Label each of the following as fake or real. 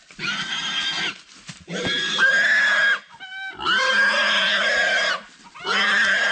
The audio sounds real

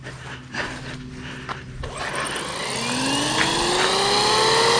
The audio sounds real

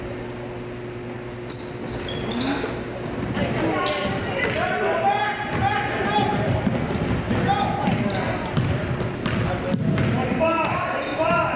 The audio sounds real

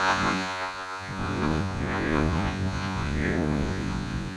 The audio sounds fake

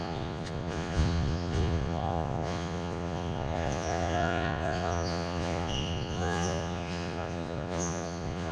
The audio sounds fake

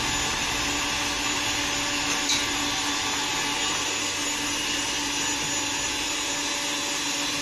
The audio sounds real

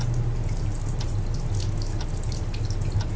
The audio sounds real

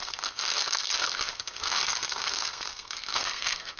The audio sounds fake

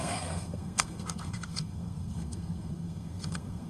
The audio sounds fake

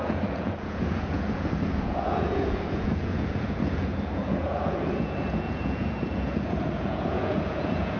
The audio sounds fake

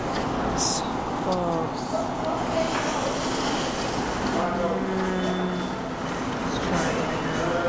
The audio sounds real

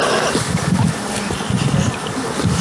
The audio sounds real